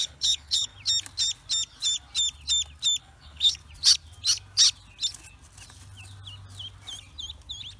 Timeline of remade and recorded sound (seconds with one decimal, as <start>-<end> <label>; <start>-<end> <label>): 0.0-0.7 remade; 0.7-3.0 recorded; 3.0-3.6 remade; 3.6-7.8 recorded